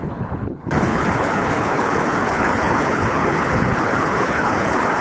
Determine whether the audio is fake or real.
fake